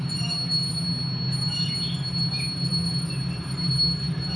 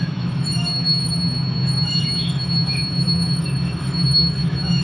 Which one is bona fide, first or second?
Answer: first